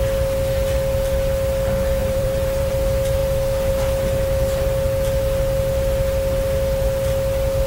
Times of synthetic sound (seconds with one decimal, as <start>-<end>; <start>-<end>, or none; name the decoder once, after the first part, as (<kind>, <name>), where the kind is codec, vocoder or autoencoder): 2.0-2.7 (vocoder, BigVGAN v2)